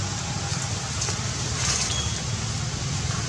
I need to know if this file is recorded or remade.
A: recorded